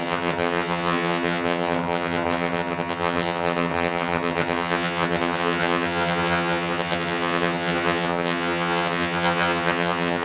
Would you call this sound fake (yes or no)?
yes